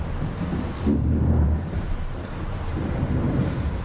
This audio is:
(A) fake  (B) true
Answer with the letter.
A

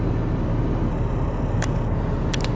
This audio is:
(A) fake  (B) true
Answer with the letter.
B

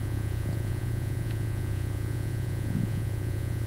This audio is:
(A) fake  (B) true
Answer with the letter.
A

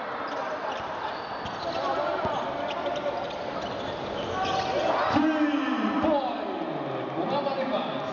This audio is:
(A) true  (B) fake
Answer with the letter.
A